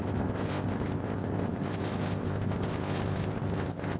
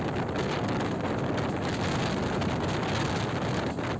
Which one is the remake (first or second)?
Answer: first